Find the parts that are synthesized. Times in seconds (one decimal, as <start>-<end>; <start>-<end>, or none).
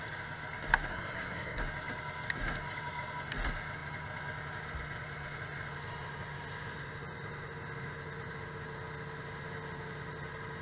0.9-1.6